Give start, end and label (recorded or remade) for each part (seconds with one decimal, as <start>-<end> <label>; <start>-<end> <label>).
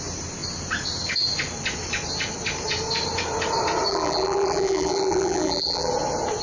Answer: 0.0-3.9 recorded; 3.9-5.9 remade; 5.9-6.4 recorded